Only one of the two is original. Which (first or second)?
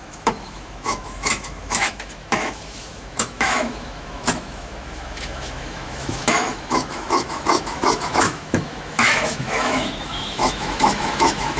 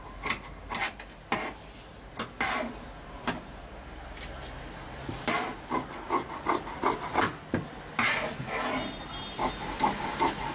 second